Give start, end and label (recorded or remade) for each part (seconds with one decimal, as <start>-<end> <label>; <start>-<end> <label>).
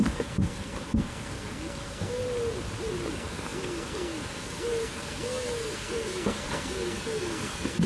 0.0-2.2 remade; 2.2-3.1 recorded; 3.1-7.9 remade